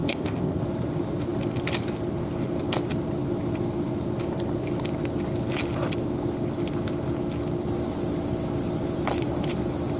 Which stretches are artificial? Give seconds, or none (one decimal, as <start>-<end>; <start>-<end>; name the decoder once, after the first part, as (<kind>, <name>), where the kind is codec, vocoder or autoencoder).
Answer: 0.0-0.6 (codec, ZipCodec)